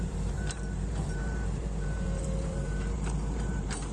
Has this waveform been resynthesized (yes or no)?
yes